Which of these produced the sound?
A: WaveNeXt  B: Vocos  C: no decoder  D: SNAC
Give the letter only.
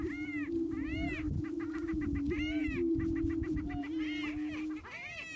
C